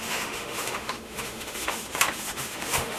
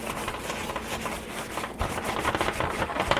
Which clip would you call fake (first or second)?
first